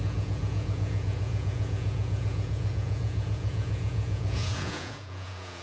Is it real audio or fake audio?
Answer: fake